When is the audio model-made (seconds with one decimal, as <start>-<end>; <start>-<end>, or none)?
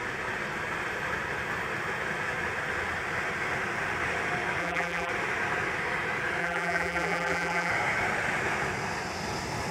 4.6-5.1; 6.4-7.7